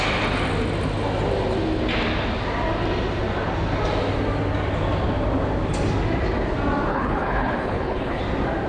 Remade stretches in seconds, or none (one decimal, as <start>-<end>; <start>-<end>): 6.9-8.2